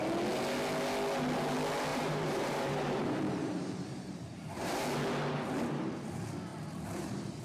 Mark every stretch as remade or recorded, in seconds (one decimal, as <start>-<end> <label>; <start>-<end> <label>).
0.0-1.9 recorded; 1.9-4.8 remade; 4.8-6.5 recorded; 6.5-7.4 remade